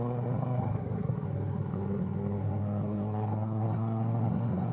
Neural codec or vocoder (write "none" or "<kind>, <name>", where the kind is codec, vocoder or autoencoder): codec, SNAC